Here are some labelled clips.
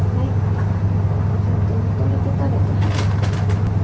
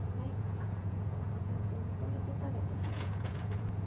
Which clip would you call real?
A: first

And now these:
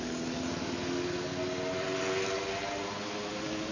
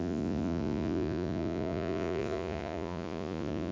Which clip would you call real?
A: first